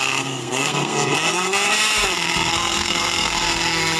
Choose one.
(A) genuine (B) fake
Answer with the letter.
B